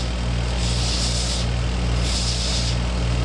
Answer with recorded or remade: recorded